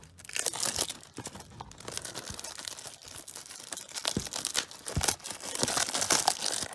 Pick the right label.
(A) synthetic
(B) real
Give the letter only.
B